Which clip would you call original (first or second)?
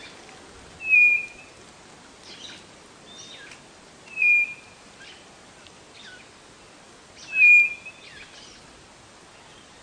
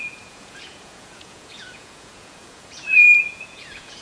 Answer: first